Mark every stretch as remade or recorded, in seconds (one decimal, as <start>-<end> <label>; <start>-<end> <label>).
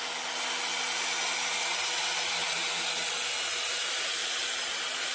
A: 0.0-5.1 recorded